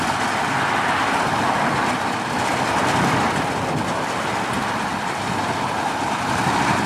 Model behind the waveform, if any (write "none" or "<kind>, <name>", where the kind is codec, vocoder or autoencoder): none